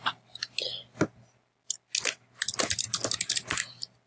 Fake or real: real